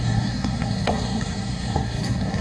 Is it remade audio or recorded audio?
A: remade